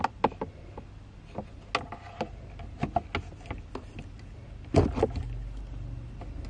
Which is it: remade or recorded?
recorded